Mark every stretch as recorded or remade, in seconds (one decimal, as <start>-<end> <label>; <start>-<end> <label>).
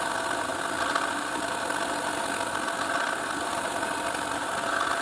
0.0-5.0 recorded